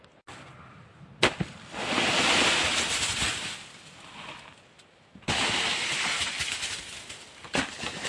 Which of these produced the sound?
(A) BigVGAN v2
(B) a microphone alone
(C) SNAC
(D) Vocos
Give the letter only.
B